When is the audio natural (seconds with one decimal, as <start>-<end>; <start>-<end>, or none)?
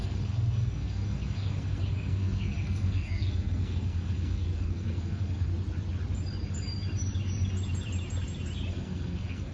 5.5-8.7